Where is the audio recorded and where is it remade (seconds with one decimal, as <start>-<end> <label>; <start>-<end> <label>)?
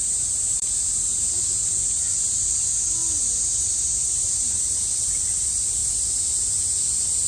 0.0-1.3 remade; 1.3-3.0 recorded; 3.0-4.9 remade; 4.9-5.8 recorded; 5.8-6.8 remade; 6.8-7.3 recorded